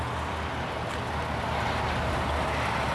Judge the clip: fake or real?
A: real